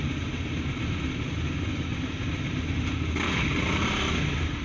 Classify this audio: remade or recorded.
recorded